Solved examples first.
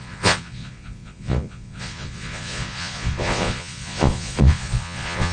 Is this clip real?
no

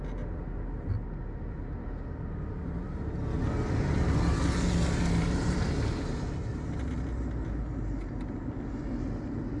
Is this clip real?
yes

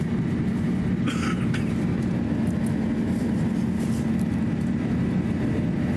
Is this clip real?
yes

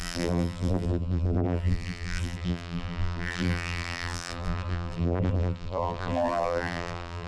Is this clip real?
no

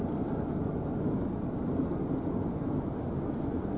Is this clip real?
yes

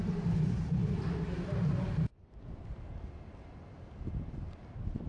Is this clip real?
no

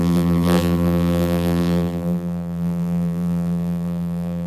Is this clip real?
no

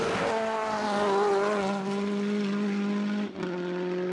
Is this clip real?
yes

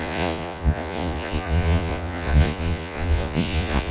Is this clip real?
no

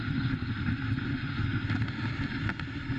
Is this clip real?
yes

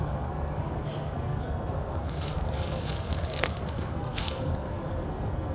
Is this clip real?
no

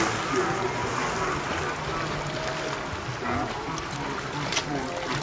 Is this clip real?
yes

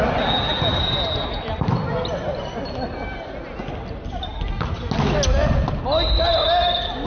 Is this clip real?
yes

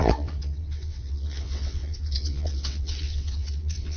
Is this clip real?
no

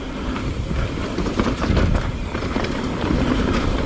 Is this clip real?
yes